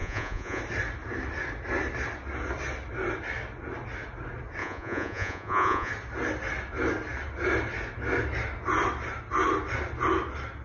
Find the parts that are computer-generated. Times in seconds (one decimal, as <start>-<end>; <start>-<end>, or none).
0.0-0.6; 4.6-5.9